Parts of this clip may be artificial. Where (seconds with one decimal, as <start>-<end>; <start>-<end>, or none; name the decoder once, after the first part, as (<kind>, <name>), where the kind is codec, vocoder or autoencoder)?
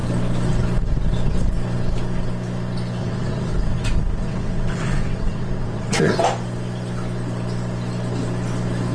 3.0-6.2 (vocoder, WaveNeXt)